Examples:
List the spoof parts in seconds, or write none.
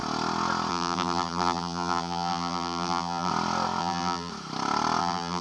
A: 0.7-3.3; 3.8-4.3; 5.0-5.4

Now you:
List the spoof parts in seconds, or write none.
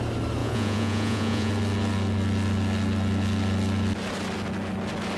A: 0.4-1.5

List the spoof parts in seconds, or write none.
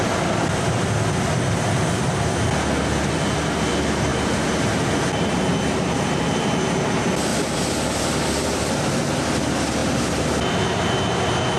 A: 7.3-8.7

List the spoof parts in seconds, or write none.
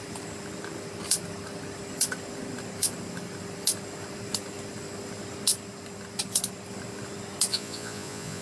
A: 7.5-8.4